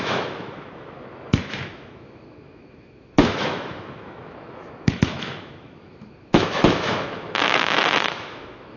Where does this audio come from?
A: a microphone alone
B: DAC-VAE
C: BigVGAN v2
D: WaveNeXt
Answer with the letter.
B